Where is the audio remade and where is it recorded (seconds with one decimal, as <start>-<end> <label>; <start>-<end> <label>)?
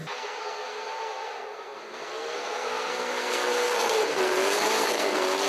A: 0.0-5.5 remade